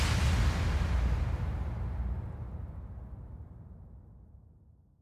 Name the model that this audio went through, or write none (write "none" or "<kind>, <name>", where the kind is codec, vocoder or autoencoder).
none